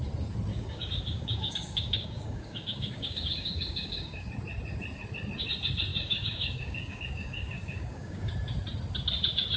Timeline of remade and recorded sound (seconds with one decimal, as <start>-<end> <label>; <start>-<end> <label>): 0.0-0.5 recorded; 0.5-4.3 remade; 4.3-5.9 recorded; 5.9-8.3 remade; 8.3-9.6 recorded